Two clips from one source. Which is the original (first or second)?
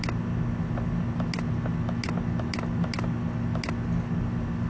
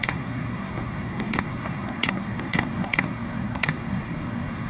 first